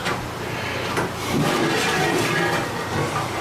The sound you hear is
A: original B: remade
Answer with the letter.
A